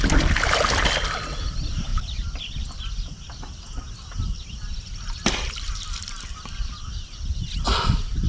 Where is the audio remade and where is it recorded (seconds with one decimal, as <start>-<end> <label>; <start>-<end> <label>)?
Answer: 0.0-8.3 recorded